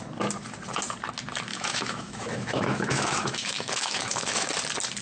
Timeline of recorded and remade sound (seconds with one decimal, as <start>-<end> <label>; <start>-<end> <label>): 0.0-1.5 recorded; 1.5-4.5 remade; 4.5-5.0 recorded